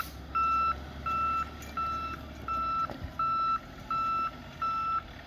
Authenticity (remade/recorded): recorded